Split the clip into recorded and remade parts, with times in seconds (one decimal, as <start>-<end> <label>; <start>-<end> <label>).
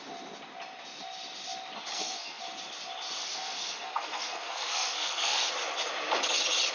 0.0-1.9 recorded; 1.9-2.4 remade; 2.4-3.2 recorded; 3.2-5.5 remade; 5.5-6.7 recorded